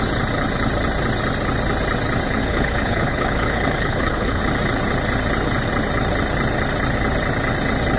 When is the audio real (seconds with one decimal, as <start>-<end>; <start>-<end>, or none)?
0.0-2.4; 4.4-8.0